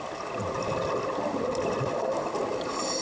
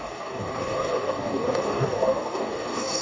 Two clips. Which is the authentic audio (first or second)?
first